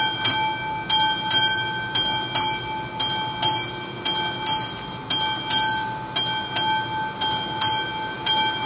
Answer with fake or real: real